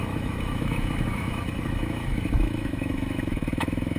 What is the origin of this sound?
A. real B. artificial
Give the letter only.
B